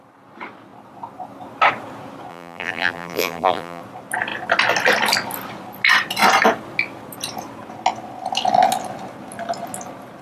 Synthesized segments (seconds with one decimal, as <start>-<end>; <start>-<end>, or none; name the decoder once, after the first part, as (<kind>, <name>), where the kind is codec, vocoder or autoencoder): 2.3-3.8 (vocoder, BigVGAN v2)